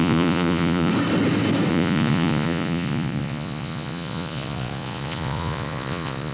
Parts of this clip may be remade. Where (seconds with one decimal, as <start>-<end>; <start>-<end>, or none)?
0.0-0.9; 1.7-6.3